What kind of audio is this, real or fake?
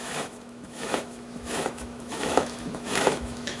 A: fake